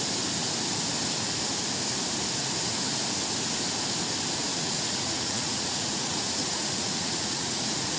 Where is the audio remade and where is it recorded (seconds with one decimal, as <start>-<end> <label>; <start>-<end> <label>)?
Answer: 0.0-4.5 recorded; 4.5-8.0 remade